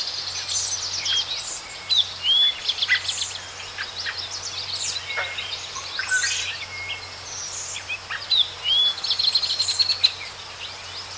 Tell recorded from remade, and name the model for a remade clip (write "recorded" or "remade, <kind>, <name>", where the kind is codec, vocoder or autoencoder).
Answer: recorded